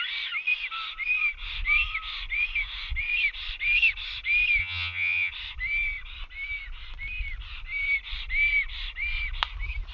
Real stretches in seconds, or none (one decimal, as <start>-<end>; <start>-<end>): 0.0-4.6; 5.3-9.9